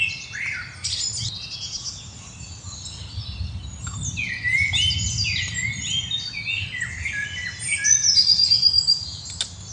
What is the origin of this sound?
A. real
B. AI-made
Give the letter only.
A